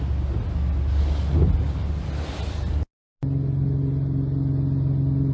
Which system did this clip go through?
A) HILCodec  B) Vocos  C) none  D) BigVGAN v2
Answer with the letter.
C